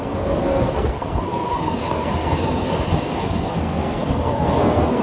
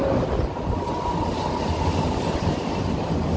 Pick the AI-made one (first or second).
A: first